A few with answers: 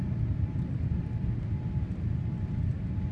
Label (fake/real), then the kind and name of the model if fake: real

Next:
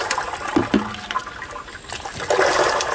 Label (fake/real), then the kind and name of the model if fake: real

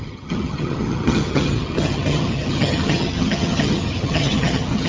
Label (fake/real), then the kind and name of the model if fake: fake, vocoder, HiFi-GAN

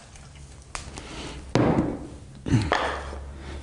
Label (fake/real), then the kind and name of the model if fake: real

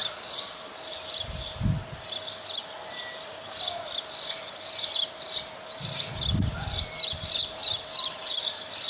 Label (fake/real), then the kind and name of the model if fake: real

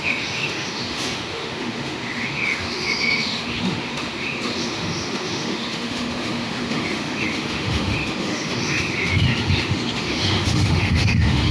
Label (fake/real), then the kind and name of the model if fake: fake, autoencoder, DAC-VAE